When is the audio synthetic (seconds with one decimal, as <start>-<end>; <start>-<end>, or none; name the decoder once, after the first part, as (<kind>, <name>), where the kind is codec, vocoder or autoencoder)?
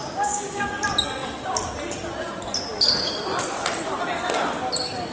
0.0-0.7 (codec, DAC)